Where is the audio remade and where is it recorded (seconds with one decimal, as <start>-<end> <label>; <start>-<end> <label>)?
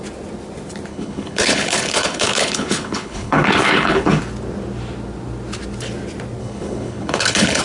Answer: 0.0-0.9 recorded; 0.9-4.2 remade; 4.2-6.4 recorded; 6.4-7.6 remade